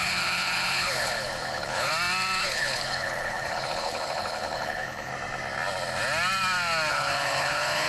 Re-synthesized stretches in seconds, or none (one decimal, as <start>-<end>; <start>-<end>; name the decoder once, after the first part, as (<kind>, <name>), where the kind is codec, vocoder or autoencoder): 0.0-1.9 (codec, HILCodec); 2.4-5.1; 6.9-7.9

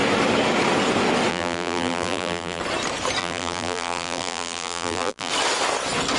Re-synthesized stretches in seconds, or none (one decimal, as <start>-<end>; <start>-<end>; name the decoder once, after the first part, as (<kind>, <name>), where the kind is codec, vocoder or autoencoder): 1.3-2.6 (vocoder, BigVGAN v2); 3.2-5.3

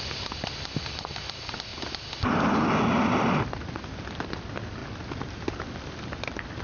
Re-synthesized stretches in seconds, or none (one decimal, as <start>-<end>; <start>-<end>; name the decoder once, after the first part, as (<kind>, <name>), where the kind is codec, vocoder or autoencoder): 0.0-1.7 (vocoder, BigVGAN v2); 3.2-6.6

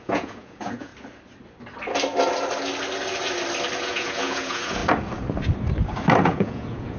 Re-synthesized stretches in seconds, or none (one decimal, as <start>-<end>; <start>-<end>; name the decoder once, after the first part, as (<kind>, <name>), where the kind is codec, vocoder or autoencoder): 0.0-0.9 (vocoder, Vocos); 3.8-4.8; 6.2-7.0

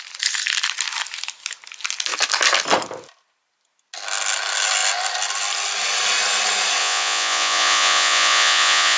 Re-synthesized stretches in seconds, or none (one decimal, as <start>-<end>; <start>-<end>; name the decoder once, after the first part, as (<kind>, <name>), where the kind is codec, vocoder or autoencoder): 6.8-9.0 (vocoder, Vocos)

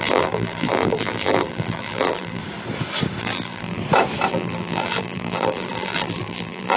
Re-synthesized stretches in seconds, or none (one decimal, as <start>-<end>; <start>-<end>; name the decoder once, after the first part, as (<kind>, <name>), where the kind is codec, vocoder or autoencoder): 0.0-2.4 (vocoder, BigVGAN v2); 3.2-3.8; 4.3-6.8